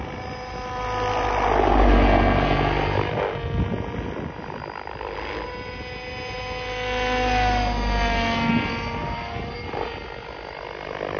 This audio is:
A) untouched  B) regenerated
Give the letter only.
A